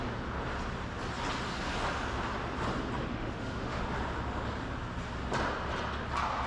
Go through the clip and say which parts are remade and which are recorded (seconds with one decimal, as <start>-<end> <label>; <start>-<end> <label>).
0.0-3.1 recorded; 3.1-3.8 remade; 3.8-6.5 recorded